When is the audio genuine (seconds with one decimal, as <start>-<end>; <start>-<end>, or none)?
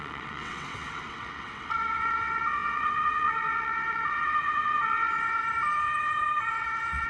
5.4-6.5